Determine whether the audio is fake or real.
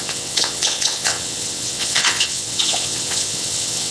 fake